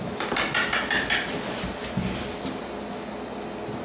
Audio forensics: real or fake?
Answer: real